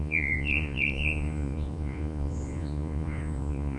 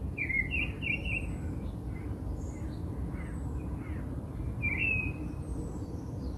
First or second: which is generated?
first